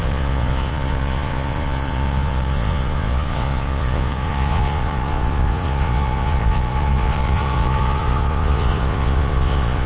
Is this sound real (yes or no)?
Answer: no